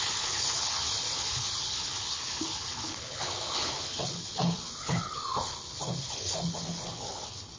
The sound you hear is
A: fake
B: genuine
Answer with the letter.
A